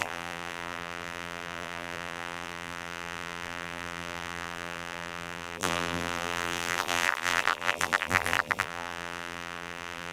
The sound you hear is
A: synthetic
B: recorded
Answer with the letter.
A